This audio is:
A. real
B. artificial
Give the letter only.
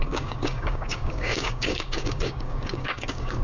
B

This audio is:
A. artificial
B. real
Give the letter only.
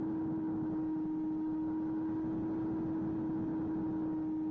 B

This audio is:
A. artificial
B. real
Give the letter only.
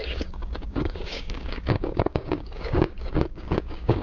A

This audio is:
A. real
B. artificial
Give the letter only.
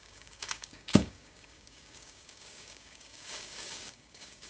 B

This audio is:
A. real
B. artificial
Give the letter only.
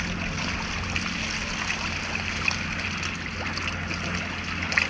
A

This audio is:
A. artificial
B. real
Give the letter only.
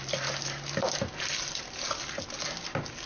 B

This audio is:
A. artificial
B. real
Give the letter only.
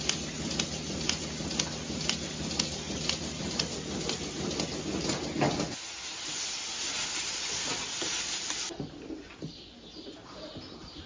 B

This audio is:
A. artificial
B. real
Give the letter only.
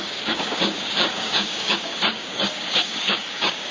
A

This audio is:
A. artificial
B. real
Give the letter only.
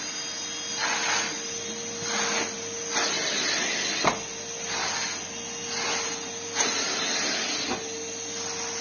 B